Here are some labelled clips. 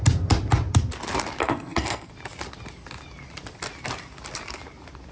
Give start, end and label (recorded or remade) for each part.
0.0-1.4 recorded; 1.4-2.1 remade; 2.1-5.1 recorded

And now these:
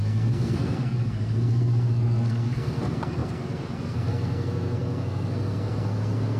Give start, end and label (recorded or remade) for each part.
0.0-6.4 remade